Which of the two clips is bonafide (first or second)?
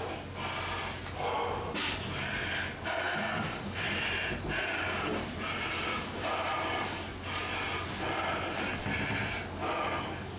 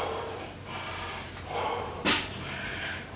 first